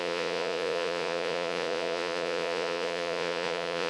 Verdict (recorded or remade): remade